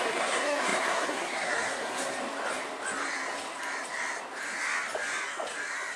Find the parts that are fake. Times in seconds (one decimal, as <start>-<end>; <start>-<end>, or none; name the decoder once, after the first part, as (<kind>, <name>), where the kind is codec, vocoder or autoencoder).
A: 0.0-2.2 (codec, SNAC)